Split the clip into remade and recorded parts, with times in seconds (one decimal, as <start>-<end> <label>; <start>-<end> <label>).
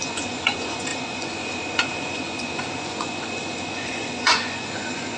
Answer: 0.0-5.2 remade